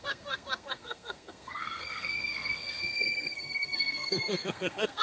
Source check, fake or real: fake